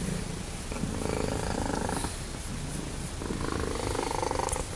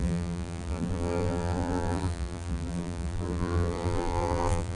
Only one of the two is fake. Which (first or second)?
second